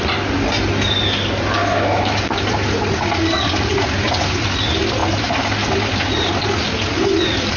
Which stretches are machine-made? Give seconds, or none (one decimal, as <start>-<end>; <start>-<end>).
1.6-2.2